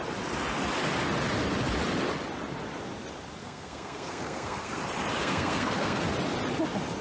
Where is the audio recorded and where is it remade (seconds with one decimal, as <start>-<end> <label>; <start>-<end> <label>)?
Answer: 0.0-3.4 recorded; 3.4-4.8 remade; 4.8-5.2 recorded; 5.2-6.0 remade; 6.0-7.0 recorded